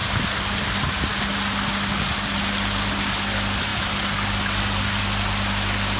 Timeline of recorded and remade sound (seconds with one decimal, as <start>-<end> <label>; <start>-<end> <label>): 0.0-6.0 recorded